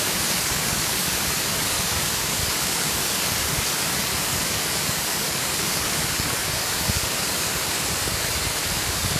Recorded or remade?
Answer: remade